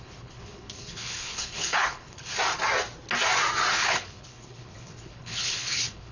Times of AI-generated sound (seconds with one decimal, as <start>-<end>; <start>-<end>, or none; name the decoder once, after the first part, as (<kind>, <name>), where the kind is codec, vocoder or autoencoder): 0.0-2.3 (codec, HILCodec); 3.7-6.1